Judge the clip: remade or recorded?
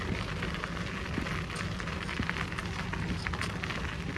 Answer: recorded